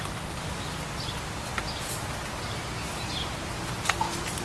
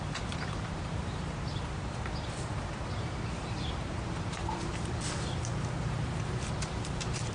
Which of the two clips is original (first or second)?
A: first